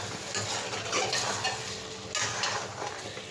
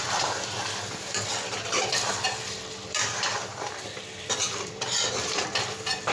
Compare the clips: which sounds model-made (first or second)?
second